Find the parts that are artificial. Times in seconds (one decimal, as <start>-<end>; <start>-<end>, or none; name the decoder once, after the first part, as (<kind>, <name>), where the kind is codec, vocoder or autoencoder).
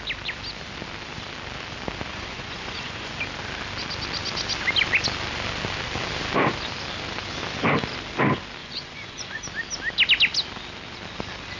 2.1-3.1 (vocoder, Vocos); 8.6-9.4